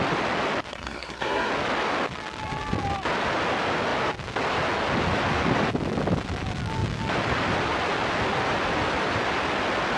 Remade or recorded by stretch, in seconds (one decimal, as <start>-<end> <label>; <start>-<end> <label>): 0.0-0.7 recorded; 0.7-1.5 remade; 1.5-10.0 recorded